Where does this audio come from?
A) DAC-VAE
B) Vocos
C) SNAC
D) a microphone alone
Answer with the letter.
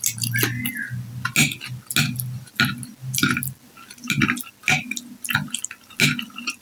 D